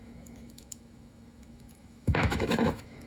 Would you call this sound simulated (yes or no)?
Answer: yes